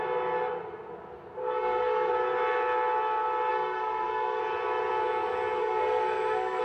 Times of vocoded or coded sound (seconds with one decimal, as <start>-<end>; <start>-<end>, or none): 1.4-2.1; 3.5-4.4; 5.6-6.6